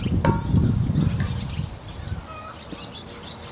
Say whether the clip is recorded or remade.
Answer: recorded